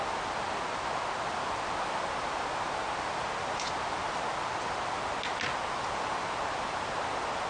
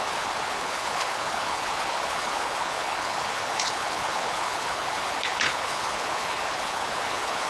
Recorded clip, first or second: first